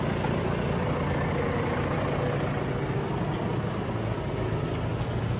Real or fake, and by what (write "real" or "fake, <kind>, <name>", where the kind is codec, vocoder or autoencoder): real